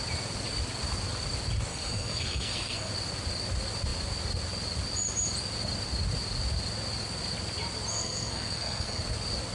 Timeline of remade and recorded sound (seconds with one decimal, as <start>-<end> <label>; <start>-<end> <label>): 0.0-1.7 recorded; 1.7-2.9 remade; 2.9-7.9 recorded; 7.9-9.0 remade; 9.0-9.5 recorded